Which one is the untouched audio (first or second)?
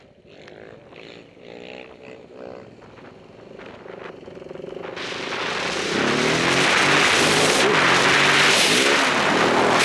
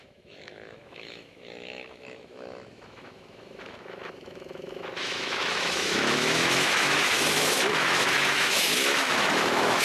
first